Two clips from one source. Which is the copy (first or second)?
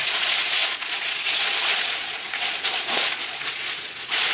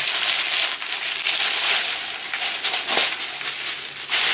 first